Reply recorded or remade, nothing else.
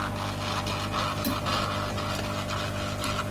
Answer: recorded